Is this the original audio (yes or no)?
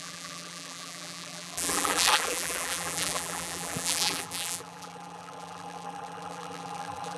no